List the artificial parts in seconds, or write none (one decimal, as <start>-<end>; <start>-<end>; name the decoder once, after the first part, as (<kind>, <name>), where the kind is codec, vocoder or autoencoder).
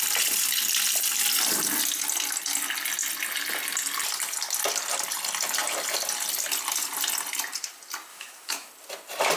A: 8.1-8.7 (autoencoder, DAC-VAE)